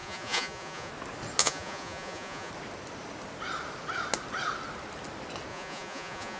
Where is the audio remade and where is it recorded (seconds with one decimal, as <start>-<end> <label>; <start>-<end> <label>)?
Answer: 0.0-0.9 remade; 0.9-1.4 recorded; 1.4-2.5 remade; 2.5-5.5 recorded; 5.5-6.4 remade